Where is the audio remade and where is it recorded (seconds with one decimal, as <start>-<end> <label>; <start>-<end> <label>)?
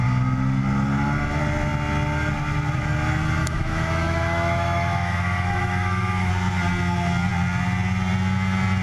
0.0-3.4 recorded; 3.4-6.3 remade; 6.3-8.8 recorded